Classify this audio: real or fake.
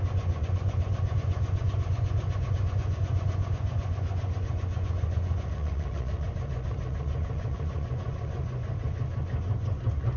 fake